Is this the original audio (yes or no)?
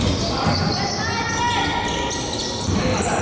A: yes